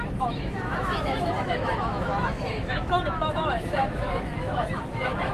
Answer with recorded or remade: remade